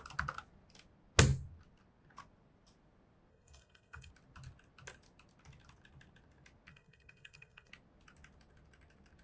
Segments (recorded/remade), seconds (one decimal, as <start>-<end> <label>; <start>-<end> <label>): 0.0-3.3 recorded; 3.3-4.1 remade; 4.1-6.7 recorded; 6.7-7.7 remade; 7.7-9.2 recorded